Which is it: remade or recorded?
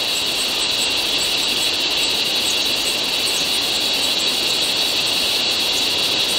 recorded